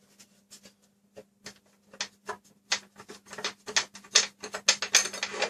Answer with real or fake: real